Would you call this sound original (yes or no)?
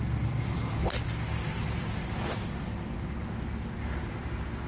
yes